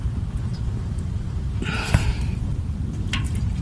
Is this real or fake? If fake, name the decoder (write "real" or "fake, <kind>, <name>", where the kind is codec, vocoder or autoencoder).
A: fake, vocoder, BigVGAN v2